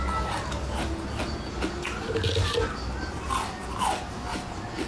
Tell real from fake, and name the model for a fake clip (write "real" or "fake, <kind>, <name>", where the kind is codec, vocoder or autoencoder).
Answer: real